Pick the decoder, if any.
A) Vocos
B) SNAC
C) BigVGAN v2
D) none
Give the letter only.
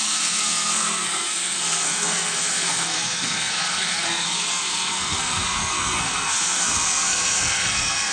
B